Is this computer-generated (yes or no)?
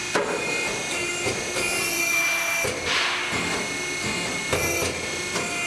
no